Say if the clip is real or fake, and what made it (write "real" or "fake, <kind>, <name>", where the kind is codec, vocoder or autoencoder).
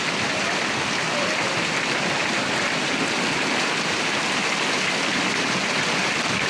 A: real